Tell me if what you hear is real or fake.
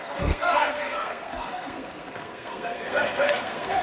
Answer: fake